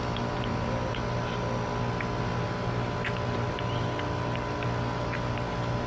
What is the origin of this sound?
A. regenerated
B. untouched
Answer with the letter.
B